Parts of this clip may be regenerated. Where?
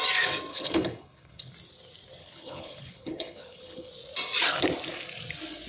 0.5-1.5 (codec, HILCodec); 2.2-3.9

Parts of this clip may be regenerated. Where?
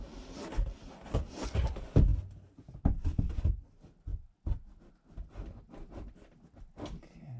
none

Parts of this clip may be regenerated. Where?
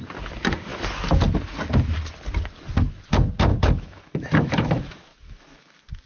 3.5-6.1 (autoencoder, DAC-VAE)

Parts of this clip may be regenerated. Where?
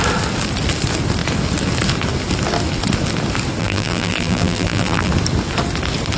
3.6-5.1 (vocoder, BigVGAN v2)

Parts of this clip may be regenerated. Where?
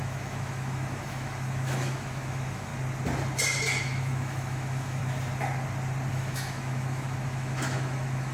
0.0-2.7 (autoencoder, DAC-VAE); 3.8-5.0; 6.1-8.3